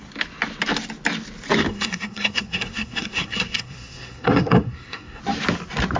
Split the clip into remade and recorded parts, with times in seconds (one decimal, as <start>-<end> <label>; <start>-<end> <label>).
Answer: 0.0-1.7 recorded; 1.7-5.2 remade; 5.2-6.0 recorded